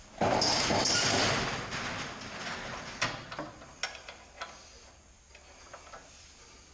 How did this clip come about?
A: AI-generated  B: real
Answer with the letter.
B